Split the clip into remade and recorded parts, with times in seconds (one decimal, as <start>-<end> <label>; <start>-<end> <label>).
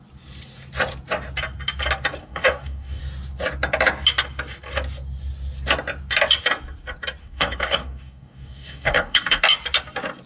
0.0-2.2 recorded; 2.2-3.0 remade; 3.0-7.2 recorded; 7.2-9.4 remade; 9.4-10.3 recorded